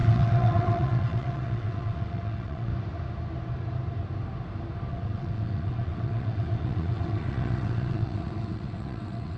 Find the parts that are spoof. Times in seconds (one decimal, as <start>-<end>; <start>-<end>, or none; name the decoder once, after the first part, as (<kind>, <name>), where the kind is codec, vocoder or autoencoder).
0.0-2.7 (vocoder, WaveNeXt); 4.9-9.4